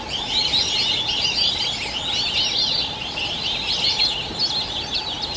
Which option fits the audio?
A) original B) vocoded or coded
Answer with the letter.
A